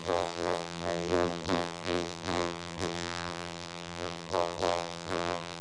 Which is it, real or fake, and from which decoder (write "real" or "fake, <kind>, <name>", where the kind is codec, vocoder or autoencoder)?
fake, vocoder, BigVGAN v2